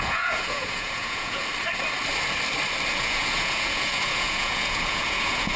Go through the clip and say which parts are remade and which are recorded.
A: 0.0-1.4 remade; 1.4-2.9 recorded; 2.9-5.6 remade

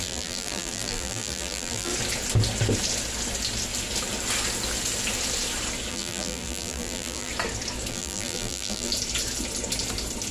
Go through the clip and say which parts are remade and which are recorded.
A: 0.0-1.9 remade; 1.9-5.9 recorded; 5.9-7.3 remade; 7.3-7.9 recorded; 7.9-8.9 remade; 8.9-10.3 recorded